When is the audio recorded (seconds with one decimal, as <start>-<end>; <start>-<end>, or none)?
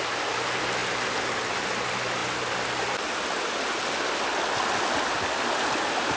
0.0-6.2